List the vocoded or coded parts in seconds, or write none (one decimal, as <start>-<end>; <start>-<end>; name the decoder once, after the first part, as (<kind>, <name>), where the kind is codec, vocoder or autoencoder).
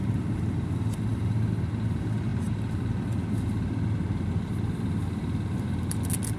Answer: 1.1-1.7 (vocoder, BigVGAN v2)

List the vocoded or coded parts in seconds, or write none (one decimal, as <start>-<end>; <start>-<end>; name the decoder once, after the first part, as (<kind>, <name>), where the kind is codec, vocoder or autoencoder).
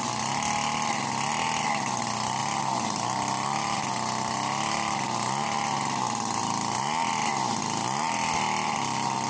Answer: none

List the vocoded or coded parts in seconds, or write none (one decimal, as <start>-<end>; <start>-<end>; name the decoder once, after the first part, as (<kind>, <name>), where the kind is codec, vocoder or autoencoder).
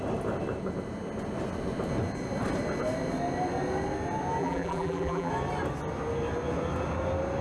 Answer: 4.4-5.3 (vocoder, BigVGAN v2)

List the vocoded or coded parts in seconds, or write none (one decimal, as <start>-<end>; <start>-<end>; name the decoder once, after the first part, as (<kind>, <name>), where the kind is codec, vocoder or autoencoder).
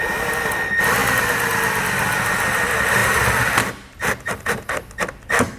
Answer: none